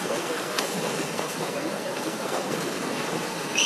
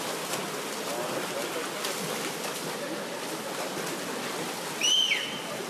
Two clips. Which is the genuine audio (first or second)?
second